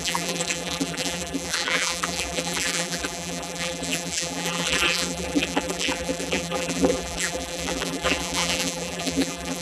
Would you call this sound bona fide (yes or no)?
no